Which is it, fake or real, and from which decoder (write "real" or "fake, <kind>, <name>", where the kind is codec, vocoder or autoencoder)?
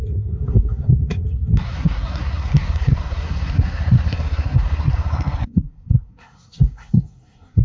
fake, codec, SNAC